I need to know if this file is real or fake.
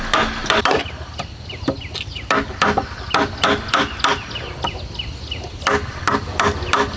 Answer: real